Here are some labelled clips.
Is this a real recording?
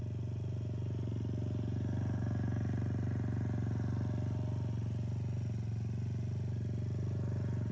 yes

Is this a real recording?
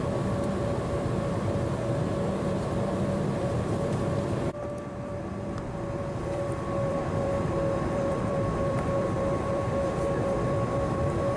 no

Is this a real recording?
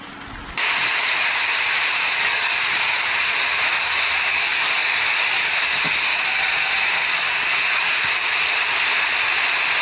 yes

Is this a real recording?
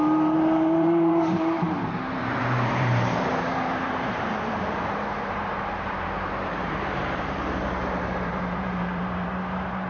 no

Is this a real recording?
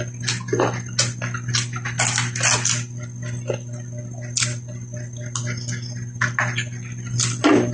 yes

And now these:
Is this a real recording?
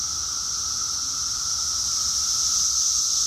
yes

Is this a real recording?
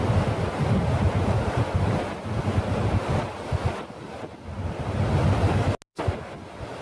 yes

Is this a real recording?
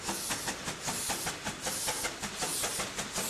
yes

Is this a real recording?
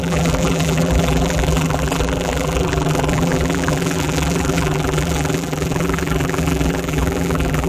no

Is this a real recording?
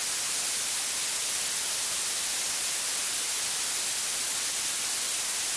yes